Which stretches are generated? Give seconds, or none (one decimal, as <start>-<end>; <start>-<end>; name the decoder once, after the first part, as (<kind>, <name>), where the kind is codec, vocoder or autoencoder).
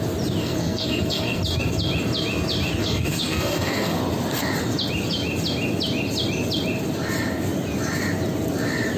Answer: 0.4-1.4 (codec, SNAC); 2.8-4.0